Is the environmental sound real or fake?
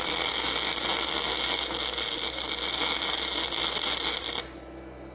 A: real